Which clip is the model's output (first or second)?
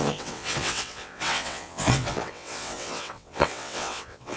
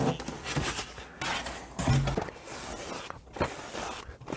first